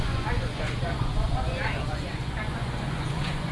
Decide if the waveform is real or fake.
fake